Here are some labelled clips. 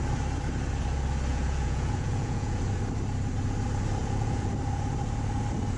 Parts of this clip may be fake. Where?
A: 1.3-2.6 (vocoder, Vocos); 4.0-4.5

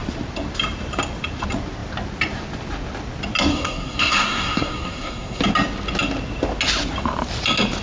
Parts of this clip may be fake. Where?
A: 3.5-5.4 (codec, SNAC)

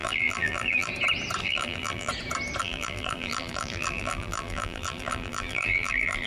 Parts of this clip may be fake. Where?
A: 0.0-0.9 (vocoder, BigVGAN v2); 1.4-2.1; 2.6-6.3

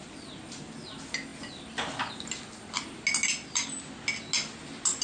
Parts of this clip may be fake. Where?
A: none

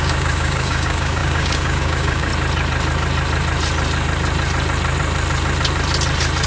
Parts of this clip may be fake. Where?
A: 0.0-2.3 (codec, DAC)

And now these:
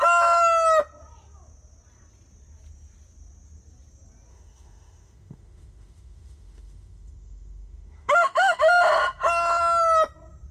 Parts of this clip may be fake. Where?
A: 4.3-8.6 (autoencoder, DAC-VAE)

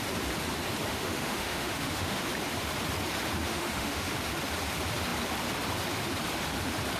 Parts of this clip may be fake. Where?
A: 0.9-2.2 (autoencoder, DAC-VAE); 3.5-4.1

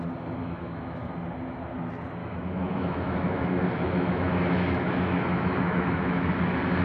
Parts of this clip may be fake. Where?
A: 0.4-1.1 (autoencoder, DAC-VAE); 2.2-6.3